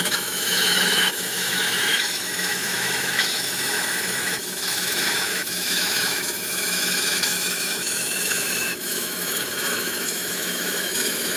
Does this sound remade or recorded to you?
remade